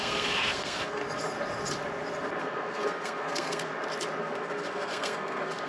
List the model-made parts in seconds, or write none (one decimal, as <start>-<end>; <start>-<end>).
0.0-1.0; 2.4-3.7; 4.2-5.7